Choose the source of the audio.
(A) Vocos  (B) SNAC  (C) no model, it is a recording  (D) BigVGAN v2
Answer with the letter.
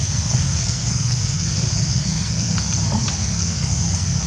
B